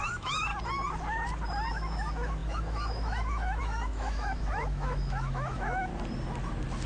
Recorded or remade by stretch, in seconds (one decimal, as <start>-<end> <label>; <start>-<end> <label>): 0.0-0.5 remade; 0.5-1.7 recorded; 1.7-5.9 remade; 5.9-6.9 recorded